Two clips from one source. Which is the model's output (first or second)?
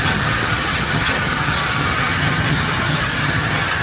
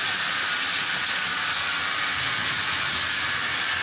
first